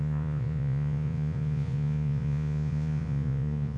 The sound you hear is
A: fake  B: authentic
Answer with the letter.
A